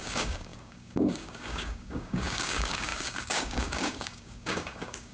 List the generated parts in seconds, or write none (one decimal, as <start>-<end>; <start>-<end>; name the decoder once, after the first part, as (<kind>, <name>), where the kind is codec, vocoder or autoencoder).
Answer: 0.0-5.1 (codec, DAC)

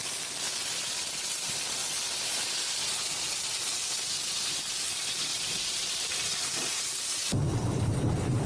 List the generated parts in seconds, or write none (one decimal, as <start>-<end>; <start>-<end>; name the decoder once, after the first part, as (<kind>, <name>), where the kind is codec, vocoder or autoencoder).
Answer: 1.8-4.1 (vocoder, BigVGAN v2); 5.3-7.4

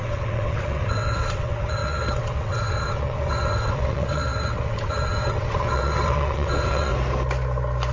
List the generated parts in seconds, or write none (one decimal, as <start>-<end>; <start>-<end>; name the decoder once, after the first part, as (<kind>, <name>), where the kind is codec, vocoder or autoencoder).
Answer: 0.0-6.9 (vocoder, WaveNeXt)

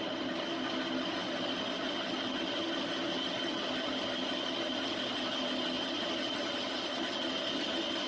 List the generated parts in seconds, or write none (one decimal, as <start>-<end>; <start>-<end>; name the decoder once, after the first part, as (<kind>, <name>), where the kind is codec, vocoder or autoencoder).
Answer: none

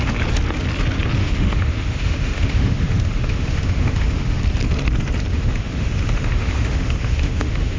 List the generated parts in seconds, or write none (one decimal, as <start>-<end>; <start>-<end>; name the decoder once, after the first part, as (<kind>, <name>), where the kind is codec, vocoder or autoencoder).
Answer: 1.2-4.4 (autoencoder, DAC-VAE); 5.3-7.8

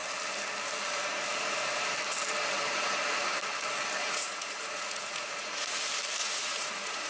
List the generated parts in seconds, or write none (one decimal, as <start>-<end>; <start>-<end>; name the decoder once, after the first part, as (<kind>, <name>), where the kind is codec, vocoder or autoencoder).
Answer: 4.0-5.8 (vocoder, Vocos); 6.2-7.1

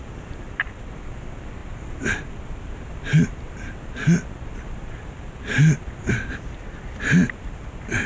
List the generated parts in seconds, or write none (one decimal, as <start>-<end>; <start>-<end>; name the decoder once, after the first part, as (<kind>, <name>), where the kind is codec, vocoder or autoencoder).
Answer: none